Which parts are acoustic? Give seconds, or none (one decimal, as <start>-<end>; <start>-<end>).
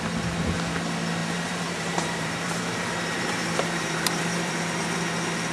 0.0-1.2; 4.5-5.5